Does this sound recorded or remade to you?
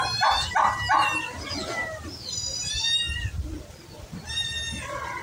recorded